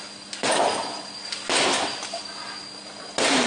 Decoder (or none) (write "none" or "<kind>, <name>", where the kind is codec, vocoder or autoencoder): none